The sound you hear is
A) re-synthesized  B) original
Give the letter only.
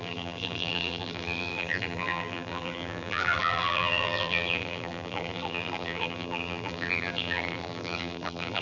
A